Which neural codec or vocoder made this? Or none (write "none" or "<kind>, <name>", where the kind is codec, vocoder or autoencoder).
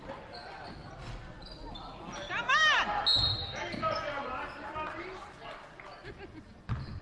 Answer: none